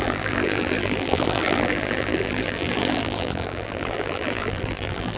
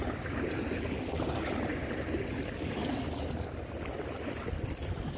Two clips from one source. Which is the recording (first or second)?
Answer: second